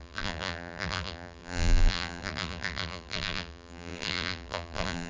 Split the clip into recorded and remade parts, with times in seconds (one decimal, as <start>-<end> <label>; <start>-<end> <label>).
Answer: 0.0-5.1 remade